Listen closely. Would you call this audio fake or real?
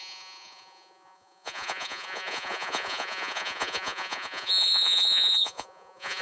fake